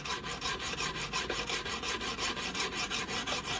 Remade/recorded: remade